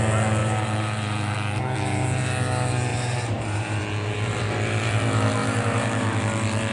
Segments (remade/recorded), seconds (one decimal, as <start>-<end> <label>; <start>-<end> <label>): 0.0-0.4 recorded; 0.4-1.6 remade; 1.6-2.9 recorded; 2.9-3.8 remade; 3.8-5.4 recorded; 5.4-6.2 remade; 6.2-6.7 recorded